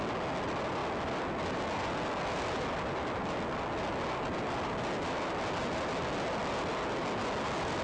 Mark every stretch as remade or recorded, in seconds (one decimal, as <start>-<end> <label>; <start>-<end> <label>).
0.0-7.8 recorded